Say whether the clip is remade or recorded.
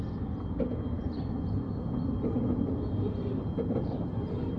recorded